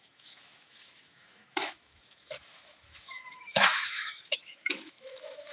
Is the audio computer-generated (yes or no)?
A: yes